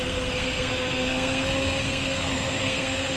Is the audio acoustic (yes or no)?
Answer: no